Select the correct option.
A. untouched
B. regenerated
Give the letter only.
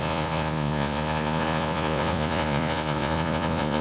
B